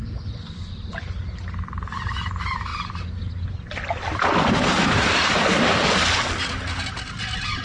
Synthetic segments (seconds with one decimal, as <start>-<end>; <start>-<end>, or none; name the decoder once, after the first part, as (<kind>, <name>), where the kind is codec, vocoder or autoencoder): none